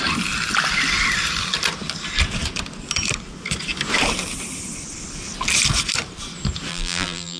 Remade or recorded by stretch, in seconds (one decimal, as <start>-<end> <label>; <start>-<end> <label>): 0.0-6.7 recorded; 6.7-7.4 remade